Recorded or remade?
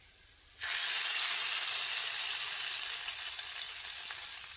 recorded